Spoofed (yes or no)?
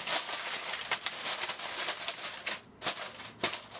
no